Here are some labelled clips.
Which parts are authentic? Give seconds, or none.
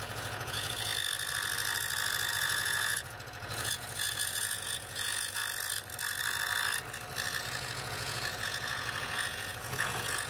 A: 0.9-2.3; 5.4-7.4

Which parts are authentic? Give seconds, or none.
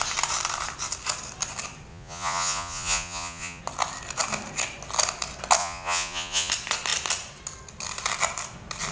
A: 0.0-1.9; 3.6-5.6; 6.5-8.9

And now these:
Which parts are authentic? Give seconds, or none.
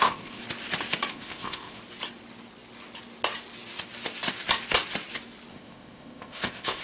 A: 0.4-1.1; 1.8-5.5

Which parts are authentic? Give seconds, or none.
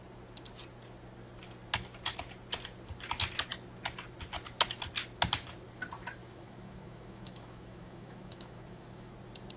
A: 0.0-6.2; 9.1-9.6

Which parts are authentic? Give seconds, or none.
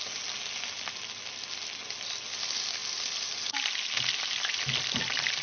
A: 0.0-5.4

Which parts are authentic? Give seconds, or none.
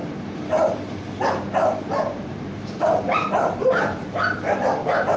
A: 0.7-1.5; 4.6-5.2